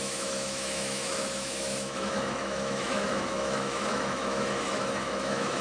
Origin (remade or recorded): remade